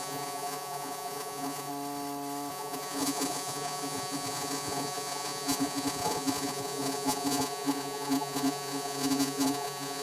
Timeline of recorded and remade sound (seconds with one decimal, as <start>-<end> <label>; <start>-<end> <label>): 0.0-1.7 remade; 1.7-2.5 recorded; 2.5-10.0 remade